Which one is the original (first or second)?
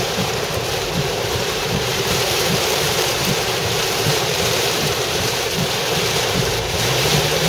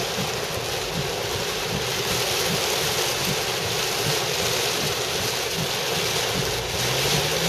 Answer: second